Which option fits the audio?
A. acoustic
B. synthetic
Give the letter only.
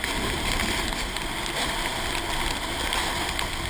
A